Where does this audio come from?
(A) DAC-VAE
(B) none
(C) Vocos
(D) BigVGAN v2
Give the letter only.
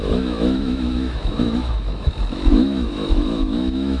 A